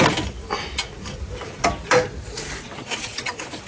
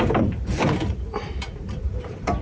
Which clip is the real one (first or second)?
first